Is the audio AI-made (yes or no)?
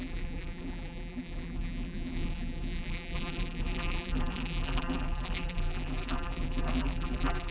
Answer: yes